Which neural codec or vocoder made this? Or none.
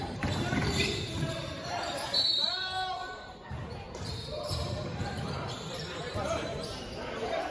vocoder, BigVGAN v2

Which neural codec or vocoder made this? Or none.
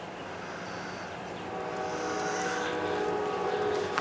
none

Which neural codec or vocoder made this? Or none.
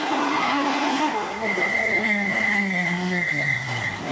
codec, SNAC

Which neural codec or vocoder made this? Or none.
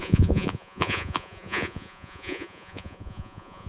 vocoder, Vocos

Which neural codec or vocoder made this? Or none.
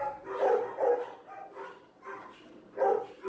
none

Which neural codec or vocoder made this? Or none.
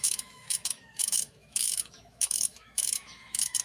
autoencoder, DAC-VAE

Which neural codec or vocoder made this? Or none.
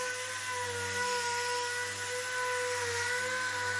none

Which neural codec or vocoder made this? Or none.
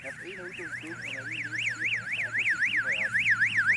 none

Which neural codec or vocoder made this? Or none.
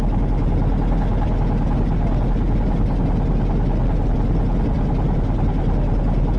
none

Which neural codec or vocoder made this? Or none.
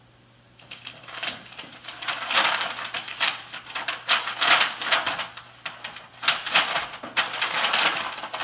none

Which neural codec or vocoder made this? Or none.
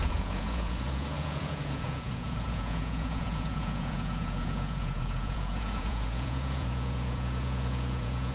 vocoder, Vocos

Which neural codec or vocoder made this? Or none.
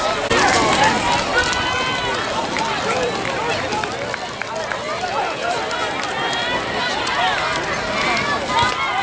none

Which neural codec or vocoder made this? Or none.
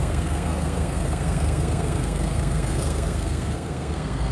codec, SNAC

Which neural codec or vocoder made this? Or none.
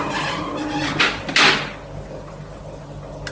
none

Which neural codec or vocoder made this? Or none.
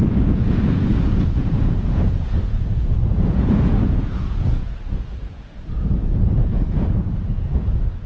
vocoder, Vocos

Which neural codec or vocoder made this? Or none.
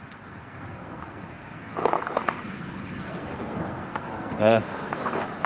codec, SNAC